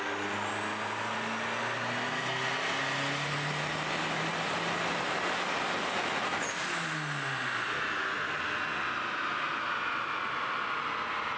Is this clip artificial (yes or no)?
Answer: no